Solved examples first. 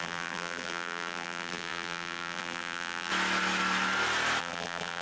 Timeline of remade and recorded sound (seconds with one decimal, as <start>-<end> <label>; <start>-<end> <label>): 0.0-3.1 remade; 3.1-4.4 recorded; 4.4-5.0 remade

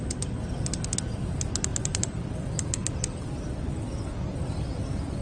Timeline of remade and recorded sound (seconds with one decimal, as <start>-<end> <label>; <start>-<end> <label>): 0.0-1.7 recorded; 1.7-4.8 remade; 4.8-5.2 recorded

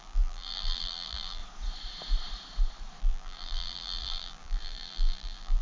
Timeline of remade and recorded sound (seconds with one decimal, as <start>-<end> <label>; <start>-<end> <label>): 0.0-1.4 remade; 1.4-3.0 recorded; 3.0-5.6 remade

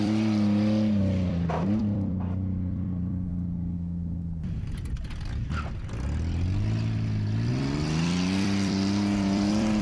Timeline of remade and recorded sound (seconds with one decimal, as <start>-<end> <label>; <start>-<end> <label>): 0.0-3.3 remade; 3.3-7.5 recorded; 7.5-9.8 remade

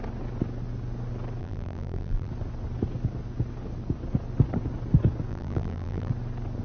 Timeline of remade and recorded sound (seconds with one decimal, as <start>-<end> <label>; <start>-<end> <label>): 0.0-1.4 recorded; 1.4-2.3 remade; 2.3-5.3 recorded; 5.3-6.1 remade; 6.1-6.6 recorded

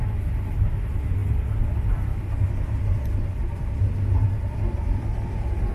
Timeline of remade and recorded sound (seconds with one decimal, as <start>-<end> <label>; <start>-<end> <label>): 0.0-5.7 recorded

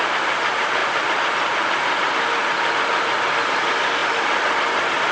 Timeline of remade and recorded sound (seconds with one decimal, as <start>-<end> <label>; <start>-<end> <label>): 0.0-0.8 recorded; 0.8-3.3 remade; 3.3-4.0 recorded; 4.0-5.1 remade